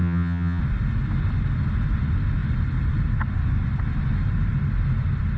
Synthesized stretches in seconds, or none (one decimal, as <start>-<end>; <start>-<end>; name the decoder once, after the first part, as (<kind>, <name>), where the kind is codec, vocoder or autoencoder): 0.0-0.6 (vocoder, HiFi-GAN)